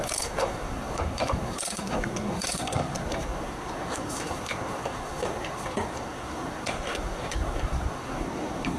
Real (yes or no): no